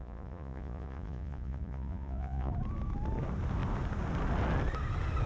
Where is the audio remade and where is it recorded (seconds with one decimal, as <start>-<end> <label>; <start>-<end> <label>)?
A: 0.0-2.5 remade; 2.5-5.3 recorded